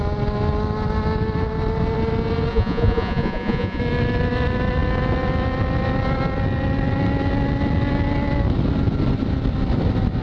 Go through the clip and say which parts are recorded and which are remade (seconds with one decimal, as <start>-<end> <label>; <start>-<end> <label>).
0.0-2.5 recorded; 2.5-3.8 remade; 3.8-10.2 recorded